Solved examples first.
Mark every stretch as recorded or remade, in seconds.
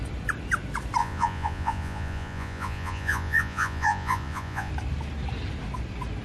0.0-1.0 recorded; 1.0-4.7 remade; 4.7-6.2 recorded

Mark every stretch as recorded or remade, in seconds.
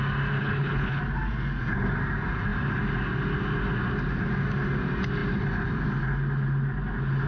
0.0-0.4 recorded; 0.4-1.0 remade; 1.0-7.3 recorded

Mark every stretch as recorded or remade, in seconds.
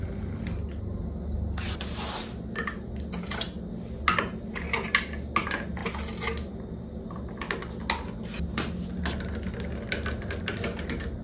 0.0-11.2 recorded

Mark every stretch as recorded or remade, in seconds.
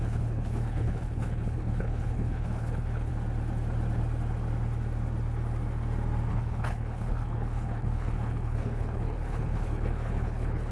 0.0-3.1 remade; 3.1-6.3 recorded; 6.3-10.7 remade